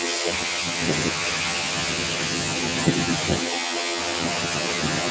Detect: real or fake fake